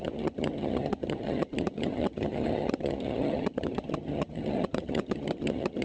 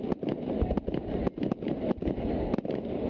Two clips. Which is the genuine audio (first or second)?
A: second